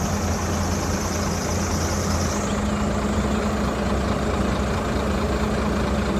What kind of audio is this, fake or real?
real